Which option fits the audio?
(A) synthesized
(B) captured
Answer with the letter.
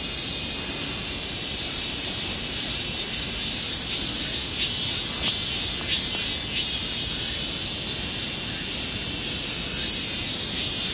B